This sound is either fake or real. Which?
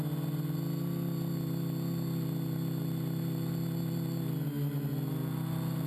real